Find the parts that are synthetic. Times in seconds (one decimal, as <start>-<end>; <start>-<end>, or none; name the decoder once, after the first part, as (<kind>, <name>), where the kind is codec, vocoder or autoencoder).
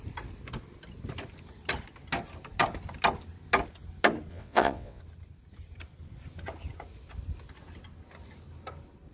4.3-5.0 (vocoder, WaveNeXt)